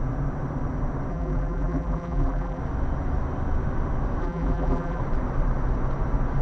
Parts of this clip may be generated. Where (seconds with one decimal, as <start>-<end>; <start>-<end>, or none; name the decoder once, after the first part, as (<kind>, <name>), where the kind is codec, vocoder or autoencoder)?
1.1-2.6 (vocoder, BigVGAN v2); 4.2-5.0